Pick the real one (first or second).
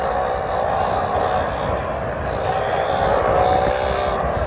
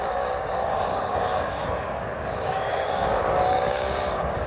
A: first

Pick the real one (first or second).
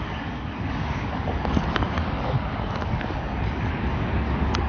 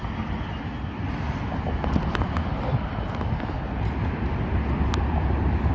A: second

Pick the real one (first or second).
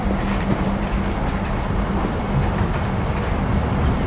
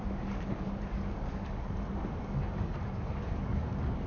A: first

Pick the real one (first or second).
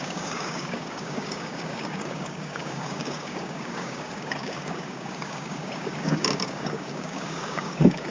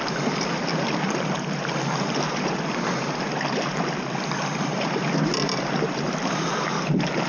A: second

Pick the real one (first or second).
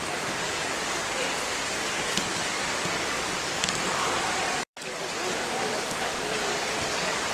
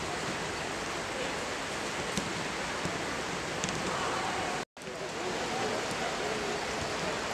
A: second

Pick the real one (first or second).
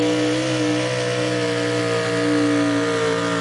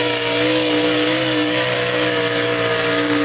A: first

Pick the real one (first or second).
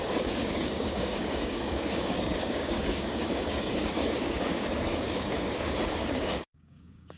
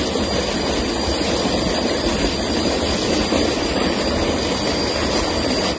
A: second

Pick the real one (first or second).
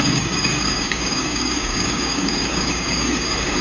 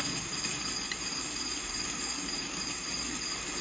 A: second